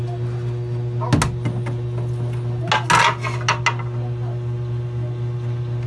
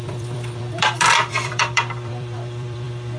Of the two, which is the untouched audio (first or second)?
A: first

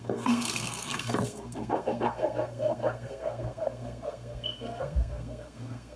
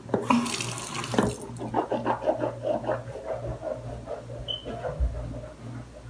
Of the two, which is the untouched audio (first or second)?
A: second